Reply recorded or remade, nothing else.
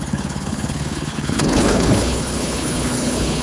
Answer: remade